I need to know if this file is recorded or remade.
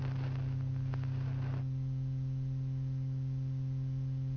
recorded